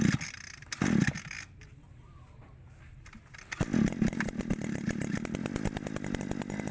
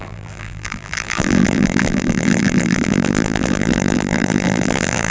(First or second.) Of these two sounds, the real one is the first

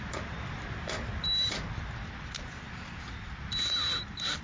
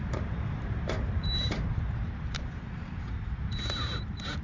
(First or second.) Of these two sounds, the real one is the first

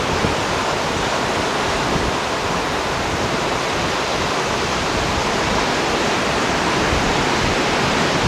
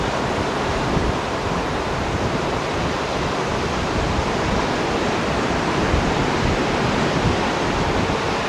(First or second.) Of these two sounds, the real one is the first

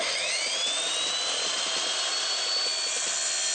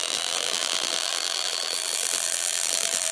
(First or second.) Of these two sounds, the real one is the first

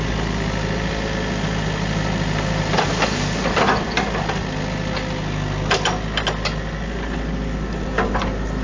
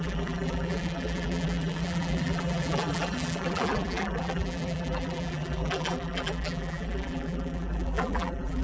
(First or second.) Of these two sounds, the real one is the first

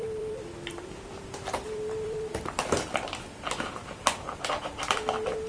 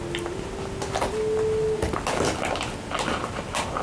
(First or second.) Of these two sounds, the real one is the second